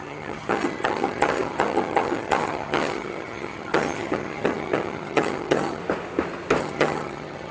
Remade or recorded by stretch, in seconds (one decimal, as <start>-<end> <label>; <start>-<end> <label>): 0.0-5.8 remade; 5.8-6.6 recorded; 6.6-7.5 remade